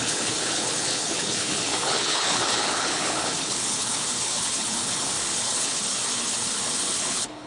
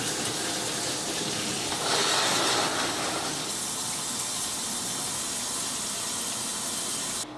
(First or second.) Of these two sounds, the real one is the second